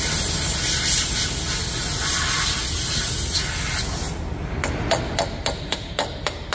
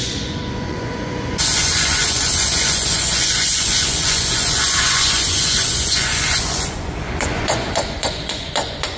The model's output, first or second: second